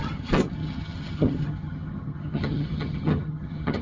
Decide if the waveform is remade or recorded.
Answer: remade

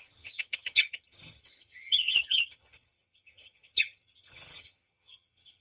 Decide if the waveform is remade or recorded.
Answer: remade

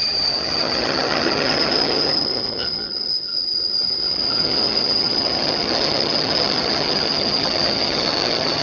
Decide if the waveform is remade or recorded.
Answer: remade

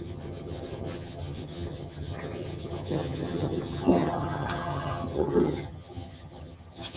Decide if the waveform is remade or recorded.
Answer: remade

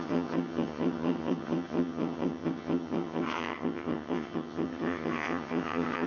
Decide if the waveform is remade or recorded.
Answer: remade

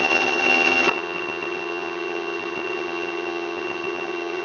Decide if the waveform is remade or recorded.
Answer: remade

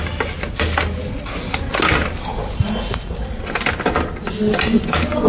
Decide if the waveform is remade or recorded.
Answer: recorded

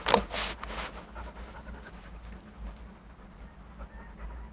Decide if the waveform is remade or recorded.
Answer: recorded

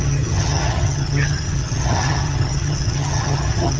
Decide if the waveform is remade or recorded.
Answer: remade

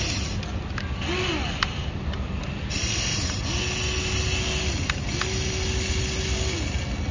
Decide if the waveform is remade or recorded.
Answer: recorded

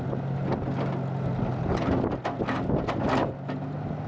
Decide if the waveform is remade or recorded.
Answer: recorded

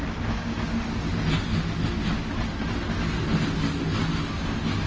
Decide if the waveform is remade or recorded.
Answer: recorded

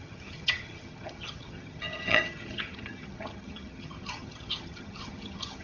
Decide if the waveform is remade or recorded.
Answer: remade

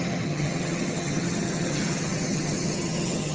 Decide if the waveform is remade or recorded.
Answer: remade